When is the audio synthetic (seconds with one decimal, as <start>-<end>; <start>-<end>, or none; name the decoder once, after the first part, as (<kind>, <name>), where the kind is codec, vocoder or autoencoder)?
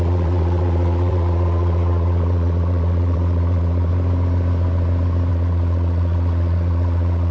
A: 0.0-3.9 (vocoder, WaveNeXt); 5.3-7.3